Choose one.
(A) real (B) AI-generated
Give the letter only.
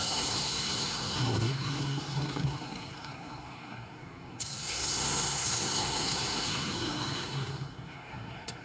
B